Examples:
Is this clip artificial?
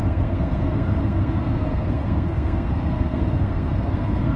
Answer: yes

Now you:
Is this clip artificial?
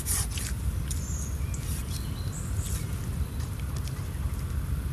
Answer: no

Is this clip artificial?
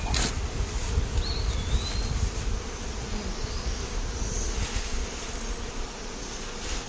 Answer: no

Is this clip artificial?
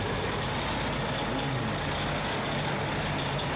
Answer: no